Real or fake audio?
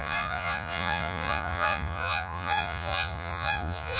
fake